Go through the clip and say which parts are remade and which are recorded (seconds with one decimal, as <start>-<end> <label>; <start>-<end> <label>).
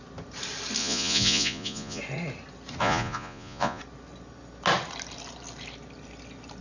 0.0-0.8 recorded; 0.8-2.0 remade; 2.0-2.8 recorded; 2.8-3.8 remade; 3.8-6.6 recorded